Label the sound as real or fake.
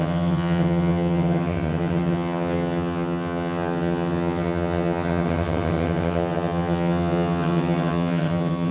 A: fake